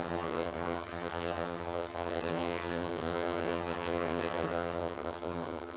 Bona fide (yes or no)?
no